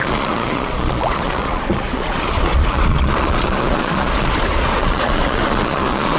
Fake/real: fake